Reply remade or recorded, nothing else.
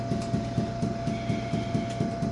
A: recorded